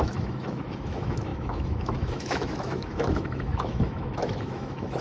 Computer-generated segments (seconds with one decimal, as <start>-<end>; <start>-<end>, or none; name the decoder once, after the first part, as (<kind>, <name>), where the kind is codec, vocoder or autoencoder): 0.0-5.0 (autoencoder, DAC-VAE)